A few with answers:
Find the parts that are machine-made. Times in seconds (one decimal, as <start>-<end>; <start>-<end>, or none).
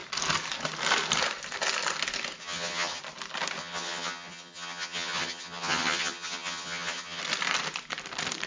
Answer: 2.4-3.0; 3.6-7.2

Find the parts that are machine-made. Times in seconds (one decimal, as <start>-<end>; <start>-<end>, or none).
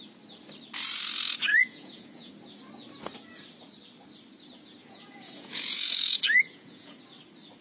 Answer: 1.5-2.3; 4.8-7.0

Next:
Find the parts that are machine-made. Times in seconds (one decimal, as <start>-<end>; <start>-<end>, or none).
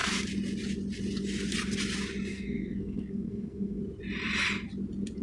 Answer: 2.3-3.8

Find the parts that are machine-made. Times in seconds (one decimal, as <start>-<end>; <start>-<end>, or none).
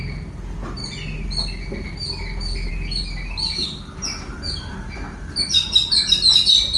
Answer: none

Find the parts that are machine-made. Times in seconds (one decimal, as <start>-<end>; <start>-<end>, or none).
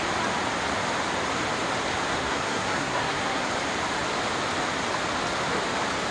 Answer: 2.1-3.5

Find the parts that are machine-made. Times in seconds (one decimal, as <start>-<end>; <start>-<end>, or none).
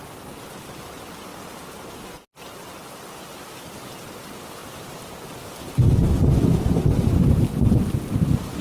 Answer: 1.3-1.9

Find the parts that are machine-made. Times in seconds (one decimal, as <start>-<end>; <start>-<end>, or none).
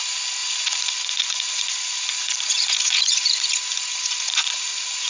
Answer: 0.4-3.5; 3.9-5.1